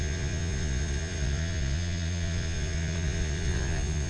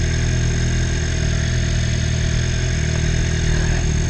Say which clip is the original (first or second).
second